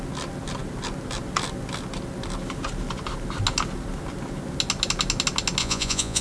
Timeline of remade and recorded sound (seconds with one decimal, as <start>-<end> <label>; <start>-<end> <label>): 0.0-5.6 recorded; 5.6-6.2 remade